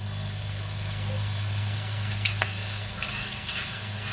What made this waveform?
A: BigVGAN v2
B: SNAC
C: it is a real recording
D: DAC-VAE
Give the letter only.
B